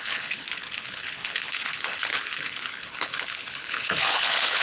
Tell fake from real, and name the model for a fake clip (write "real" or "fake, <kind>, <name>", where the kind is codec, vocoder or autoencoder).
fake, codec, HILCodec